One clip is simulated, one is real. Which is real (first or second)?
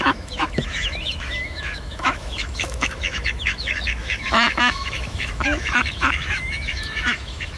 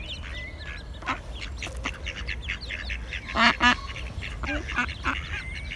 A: second